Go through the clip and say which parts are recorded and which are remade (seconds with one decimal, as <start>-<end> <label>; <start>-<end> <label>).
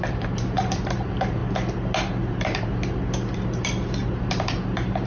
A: 0.0-1.4 remade; 1.4-2.1 recorded; 2.1-5.1 remade